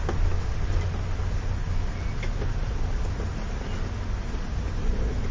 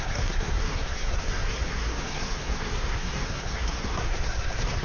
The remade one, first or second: second